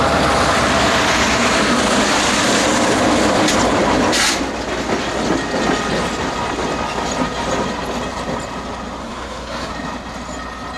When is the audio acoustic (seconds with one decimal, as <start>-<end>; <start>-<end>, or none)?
0.0-9.0; 9.7-10.8